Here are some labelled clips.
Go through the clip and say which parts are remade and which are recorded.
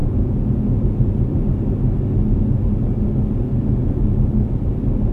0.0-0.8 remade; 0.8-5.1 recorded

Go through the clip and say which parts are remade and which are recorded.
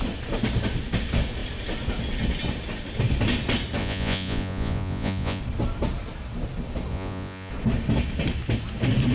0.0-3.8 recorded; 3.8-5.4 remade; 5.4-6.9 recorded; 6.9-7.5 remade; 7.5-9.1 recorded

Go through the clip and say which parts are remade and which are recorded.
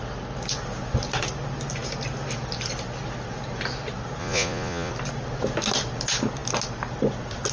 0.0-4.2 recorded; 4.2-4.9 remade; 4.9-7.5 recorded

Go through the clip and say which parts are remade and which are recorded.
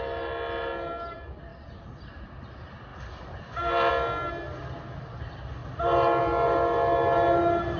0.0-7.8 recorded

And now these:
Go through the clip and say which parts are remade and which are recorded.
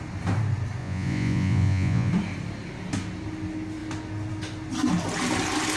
0.0-0.8 recorded; 0.8-2.1 remade; 2.1-5.8 recorded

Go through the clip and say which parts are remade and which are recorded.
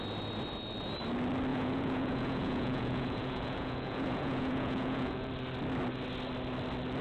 0.0-1.5 recorded; 1.5-5.3 remade; 5.3-7.0 recorded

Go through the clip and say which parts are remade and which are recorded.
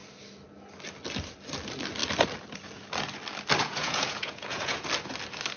0.0-3.6 recorded; 3.6-4.8 remade; 4.8-5.6 recorded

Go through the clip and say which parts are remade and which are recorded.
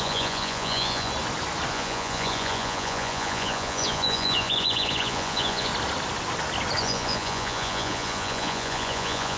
0.0-1.1 remade; 1.1-1.7 recorded; 1.7-5.7 remade; 5.7-6.8 recorded; 6.8-9.4 remade